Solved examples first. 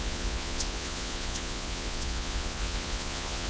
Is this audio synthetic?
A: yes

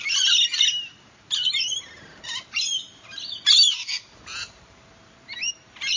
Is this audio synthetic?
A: yes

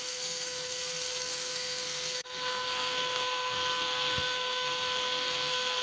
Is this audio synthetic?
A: yes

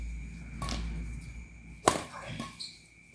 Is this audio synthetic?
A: no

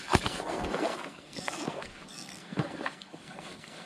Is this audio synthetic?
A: yes